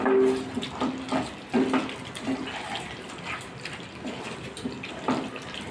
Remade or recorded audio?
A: recorded